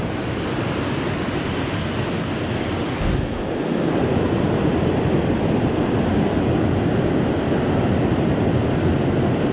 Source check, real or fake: real